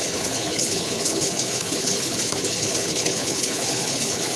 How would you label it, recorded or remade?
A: remade